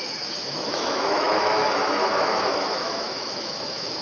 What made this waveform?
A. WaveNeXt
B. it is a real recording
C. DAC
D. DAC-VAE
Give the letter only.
D